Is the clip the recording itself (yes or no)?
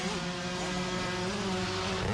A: yes